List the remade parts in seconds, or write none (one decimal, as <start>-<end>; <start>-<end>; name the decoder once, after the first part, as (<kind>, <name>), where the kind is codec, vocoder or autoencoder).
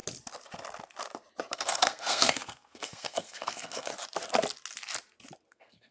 1.5-3.9 (codec, SNAC); 5.5-5.9